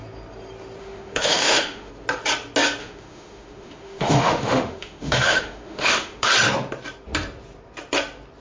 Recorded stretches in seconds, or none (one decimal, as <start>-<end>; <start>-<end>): 0.0-0.8; 1.9-2.8; 6.3-8.4